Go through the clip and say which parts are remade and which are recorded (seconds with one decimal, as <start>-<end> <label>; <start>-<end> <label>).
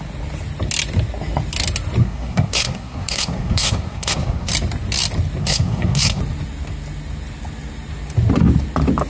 0.0-2.0 recorded; 2.0-4.5 remade; 4.5-5.4 recorded; 5.4-6.2 remade; 6.2-9.1 recorded